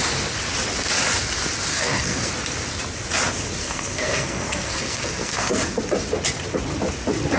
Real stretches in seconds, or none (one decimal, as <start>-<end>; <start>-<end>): 0.0-1.7; 2.3-3.6; 5.8-7.4